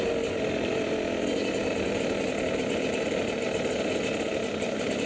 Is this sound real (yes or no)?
yes